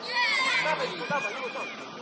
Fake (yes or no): no